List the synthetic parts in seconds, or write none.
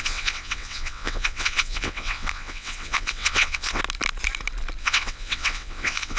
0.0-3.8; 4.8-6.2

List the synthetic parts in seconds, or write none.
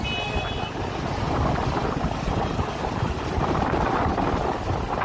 none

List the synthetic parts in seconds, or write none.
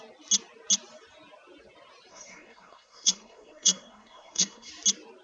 2.1-4.7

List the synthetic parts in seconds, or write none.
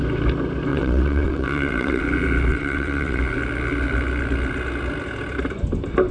0.7-2.0; 2.5-3.2